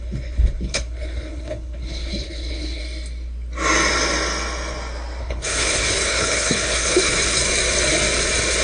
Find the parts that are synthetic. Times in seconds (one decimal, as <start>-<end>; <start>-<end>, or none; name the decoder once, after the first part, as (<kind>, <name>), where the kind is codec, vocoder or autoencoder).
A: 0.0-2.8 (codec, HILCodec); 5.2-7.4